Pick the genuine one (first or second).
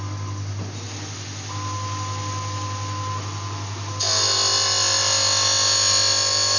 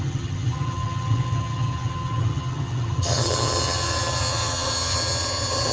first